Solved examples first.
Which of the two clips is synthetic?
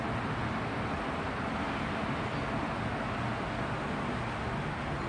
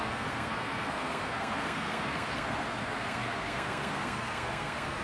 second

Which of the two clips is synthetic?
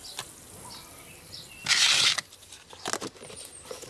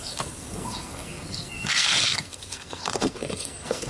second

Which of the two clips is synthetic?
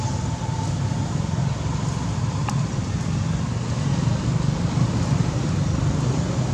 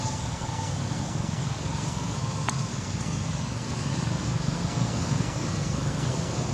second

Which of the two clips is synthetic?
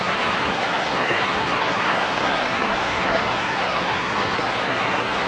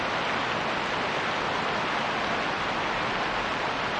first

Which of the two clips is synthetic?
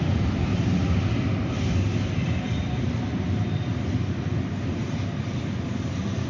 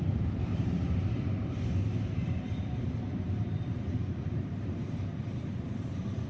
second